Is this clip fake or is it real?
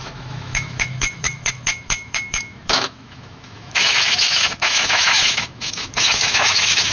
fake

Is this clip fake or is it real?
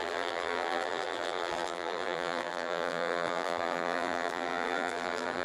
fake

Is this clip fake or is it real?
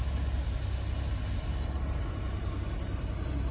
real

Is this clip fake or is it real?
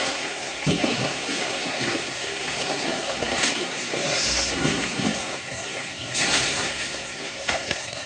fake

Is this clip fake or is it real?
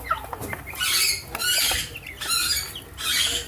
real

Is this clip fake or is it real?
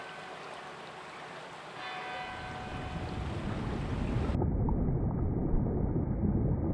real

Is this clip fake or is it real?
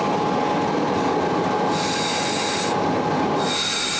real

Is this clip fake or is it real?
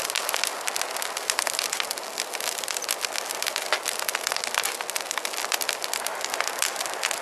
real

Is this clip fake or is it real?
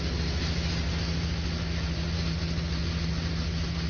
real